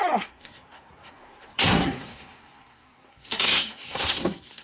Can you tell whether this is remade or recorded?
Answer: remade